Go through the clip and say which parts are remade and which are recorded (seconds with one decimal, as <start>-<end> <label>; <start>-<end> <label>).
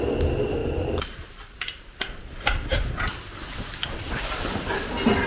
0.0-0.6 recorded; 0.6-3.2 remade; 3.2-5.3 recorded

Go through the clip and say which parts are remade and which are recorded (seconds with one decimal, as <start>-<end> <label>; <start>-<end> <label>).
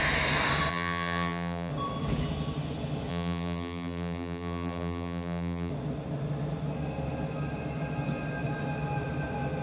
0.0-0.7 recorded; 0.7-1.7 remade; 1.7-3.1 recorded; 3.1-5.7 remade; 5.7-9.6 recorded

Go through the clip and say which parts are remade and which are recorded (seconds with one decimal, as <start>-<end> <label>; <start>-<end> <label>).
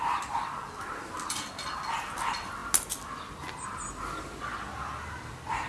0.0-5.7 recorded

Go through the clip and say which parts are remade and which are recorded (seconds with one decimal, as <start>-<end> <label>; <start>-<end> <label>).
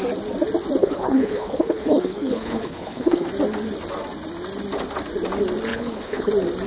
0.0-0.8 recorded; 0.8-3.3 remade; 3.3-5.7 recorded; 5.7-6.3 remade; 6.3-6.7 recorded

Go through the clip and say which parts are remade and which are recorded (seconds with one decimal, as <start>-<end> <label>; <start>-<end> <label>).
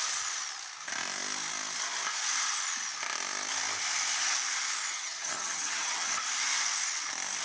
0.0-4.9 recorded; 4.9-6.2 remade; 6.2-7.4 recorded